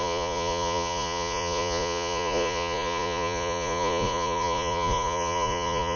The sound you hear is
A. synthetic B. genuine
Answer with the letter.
A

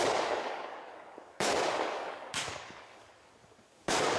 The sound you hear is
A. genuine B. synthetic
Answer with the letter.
B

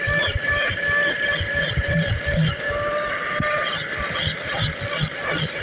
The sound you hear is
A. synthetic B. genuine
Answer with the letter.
B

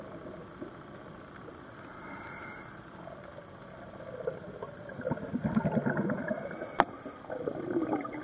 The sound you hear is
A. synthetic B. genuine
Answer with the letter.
B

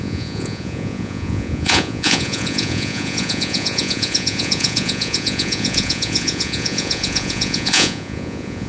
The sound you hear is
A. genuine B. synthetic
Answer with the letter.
B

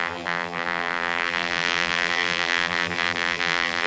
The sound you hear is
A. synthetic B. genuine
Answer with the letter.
A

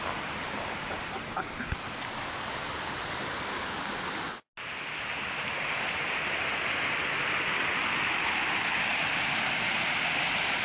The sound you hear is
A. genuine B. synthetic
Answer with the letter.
A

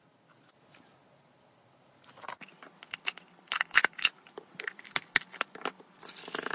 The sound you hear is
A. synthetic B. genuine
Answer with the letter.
B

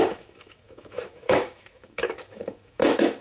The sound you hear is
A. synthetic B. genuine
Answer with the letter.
A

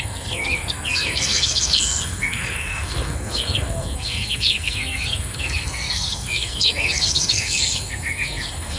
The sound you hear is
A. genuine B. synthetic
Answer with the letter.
B